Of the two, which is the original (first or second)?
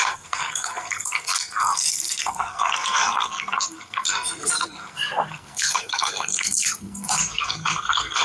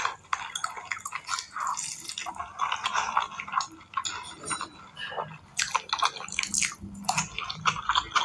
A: second